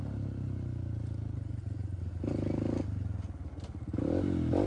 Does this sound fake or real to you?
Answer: real